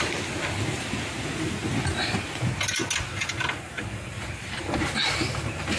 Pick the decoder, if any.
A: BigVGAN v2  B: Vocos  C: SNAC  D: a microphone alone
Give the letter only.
D